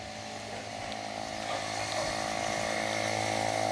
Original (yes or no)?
yes